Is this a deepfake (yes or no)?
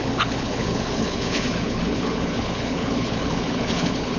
yes